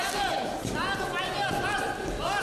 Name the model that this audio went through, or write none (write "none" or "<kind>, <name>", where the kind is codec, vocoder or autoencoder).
none